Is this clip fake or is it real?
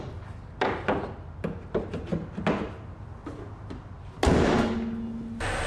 real